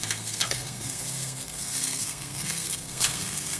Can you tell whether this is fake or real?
fake